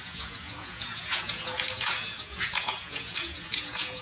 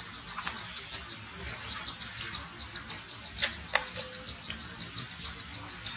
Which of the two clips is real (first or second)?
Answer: second